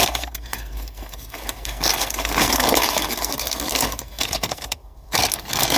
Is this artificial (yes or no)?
yes